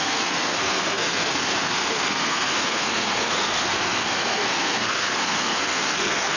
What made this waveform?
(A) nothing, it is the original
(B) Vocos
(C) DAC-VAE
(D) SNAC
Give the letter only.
D